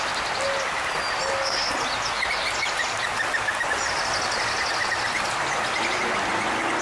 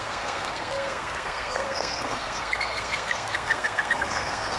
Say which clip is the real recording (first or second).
first